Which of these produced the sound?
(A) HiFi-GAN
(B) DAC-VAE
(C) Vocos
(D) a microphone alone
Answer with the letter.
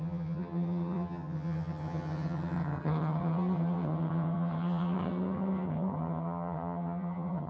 A